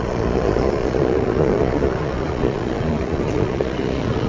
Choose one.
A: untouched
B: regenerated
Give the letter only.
B